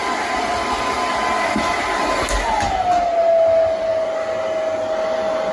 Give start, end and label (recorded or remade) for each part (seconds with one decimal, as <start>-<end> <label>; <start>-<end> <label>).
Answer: 0.0-5.5 recorded